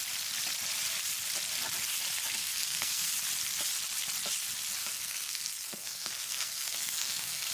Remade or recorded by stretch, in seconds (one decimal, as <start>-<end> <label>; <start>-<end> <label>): 0.0-2.4 recorded; 2.4-3.1 remade; 3.1-4.8 recorded; 4.8-7.5 remade